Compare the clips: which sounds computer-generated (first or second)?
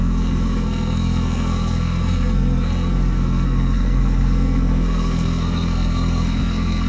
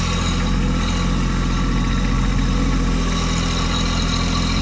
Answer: first